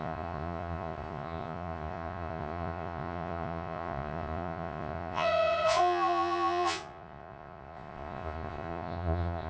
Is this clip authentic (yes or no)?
no